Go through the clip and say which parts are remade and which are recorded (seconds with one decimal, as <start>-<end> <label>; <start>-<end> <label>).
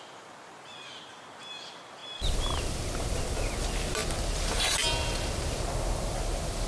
0.0-6.7 recorded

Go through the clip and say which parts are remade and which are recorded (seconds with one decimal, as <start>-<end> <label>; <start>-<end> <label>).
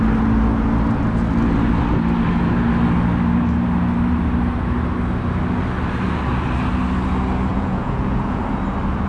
0.0-7.5 recorded; 7.5-8.4 remade; 8.4-9.1 recorded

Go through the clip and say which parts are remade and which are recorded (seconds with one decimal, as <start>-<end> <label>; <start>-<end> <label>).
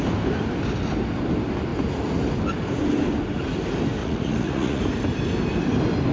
0.0-4.0 recorded; 4.0-4.8 remade; 4.8-6.1 recorded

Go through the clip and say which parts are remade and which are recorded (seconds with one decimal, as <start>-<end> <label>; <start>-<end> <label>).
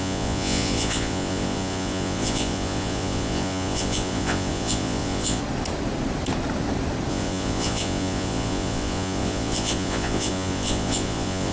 0.0-5.4 remade; 5.4-7.1 recorded; 7.1-11.5 remade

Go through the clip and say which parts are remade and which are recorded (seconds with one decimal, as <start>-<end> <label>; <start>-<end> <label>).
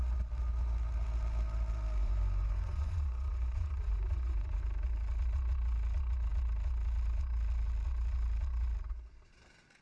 0.0-2.0 recorded; 2.0-4.6 remade; 4.6-9.8 recorded